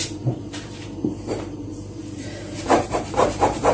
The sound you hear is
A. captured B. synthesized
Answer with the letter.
B